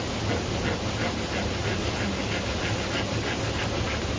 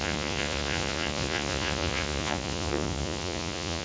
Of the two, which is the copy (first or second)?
second